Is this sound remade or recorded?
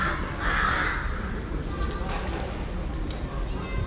recorded